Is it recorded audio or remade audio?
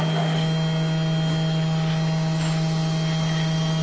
recorded